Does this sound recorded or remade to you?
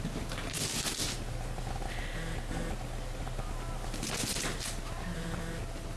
recorded